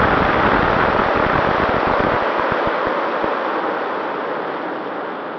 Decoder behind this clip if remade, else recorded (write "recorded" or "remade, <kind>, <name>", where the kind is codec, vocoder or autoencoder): recorded